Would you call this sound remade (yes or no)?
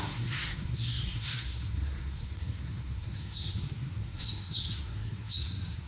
yes